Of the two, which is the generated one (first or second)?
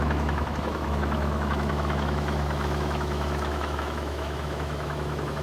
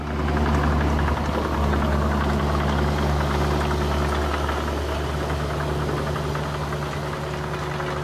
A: first